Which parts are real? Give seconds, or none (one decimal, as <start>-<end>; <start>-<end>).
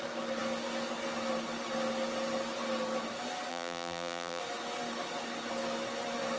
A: 0.0-3.5; 4.4-6.4